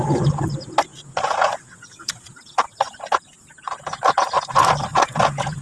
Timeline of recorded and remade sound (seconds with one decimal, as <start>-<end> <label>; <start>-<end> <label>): 0.0-0.9 recorded; 0.9-4.3 remade; 4.3-4.9 recorded; 4.9-5.6 remade